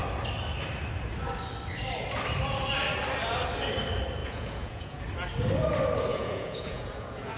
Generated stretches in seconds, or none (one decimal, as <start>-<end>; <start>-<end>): 4.2-5.0; 6.1-7.4